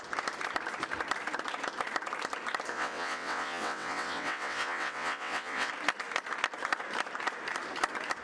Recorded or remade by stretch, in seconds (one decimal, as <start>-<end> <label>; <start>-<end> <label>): 0.0-2.7 recorded; 2.7-5.7 remade; 5.7-8.2 recorded